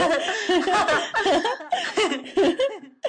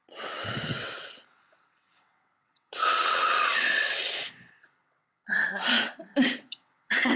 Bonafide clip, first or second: first